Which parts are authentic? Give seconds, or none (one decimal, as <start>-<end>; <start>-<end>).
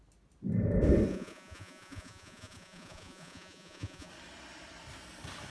0.0-1.1; 4.1-5.5